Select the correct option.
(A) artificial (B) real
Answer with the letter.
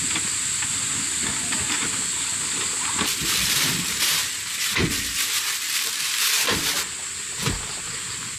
B